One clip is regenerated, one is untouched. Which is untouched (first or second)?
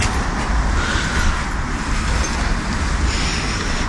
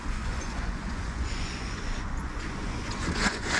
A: first